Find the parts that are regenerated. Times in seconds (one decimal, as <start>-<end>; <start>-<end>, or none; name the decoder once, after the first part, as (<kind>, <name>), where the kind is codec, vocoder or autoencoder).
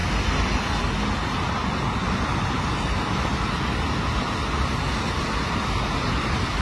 none